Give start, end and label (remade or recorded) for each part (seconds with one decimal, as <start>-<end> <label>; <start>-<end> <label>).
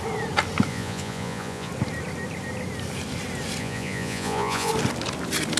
0.0-0.7 recorded; 0.7-1.7 remade; 1.7-3.6 recorded; 3.6-4.7 remade; 4.7-5.6 recorded